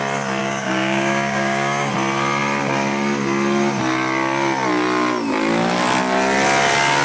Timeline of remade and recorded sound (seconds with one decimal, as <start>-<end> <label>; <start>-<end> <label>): 0.0-0.4 recorded; 0.4-1.9 remade; 1.9-7.0 recorded